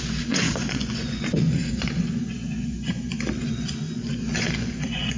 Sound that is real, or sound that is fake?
fake